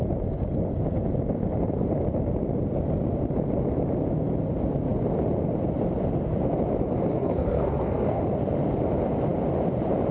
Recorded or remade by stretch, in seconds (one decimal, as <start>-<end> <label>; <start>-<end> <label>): 0.0-7.1 recorded; 7.1-8.2 remade; 8.2-10.1 recorded